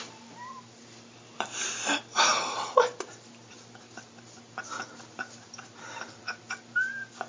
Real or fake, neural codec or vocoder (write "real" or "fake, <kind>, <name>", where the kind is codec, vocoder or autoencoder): fake, vocoder, BigVGAN v2